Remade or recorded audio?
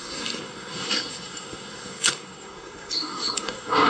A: remade